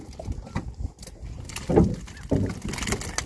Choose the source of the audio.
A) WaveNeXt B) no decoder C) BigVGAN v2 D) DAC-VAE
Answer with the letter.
B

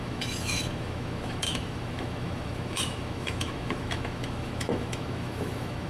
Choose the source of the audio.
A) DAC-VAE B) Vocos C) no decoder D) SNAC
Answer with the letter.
A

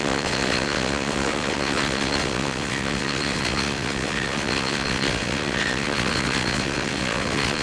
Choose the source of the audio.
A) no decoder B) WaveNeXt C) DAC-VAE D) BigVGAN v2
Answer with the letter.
B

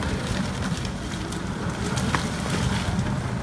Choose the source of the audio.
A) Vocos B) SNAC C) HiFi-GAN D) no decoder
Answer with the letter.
D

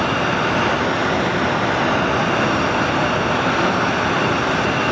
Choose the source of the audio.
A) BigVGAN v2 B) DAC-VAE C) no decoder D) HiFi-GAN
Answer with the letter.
C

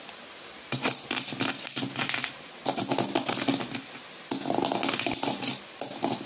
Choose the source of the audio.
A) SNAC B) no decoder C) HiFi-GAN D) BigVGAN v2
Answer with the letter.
B